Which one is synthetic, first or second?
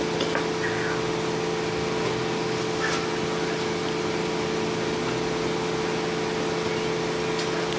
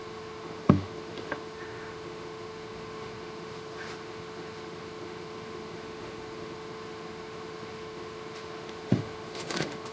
second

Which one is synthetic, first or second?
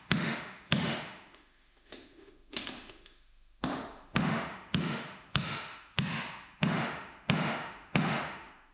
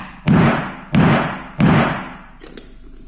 first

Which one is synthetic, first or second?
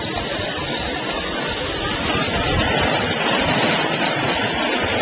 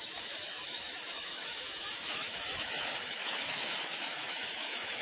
second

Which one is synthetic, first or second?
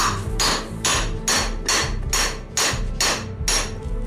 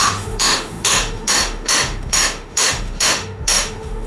second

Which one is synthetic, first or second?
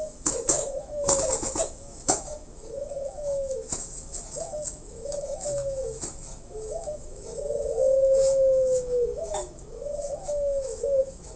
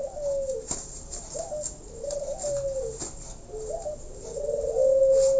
first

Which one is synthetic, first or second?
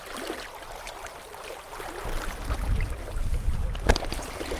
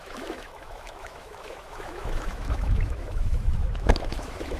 second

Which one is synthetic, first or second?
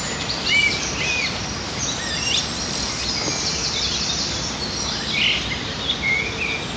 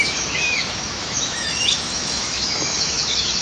second